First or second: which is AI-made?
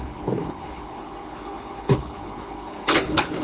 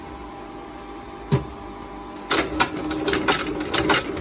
first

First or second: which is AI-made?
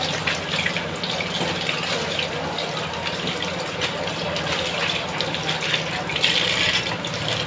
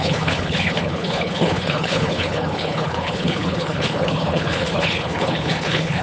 second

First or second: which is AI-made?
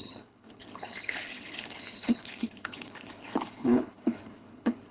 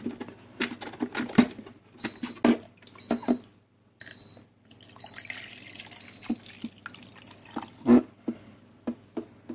first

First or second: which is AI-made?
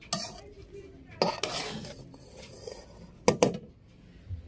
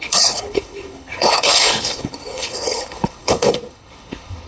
second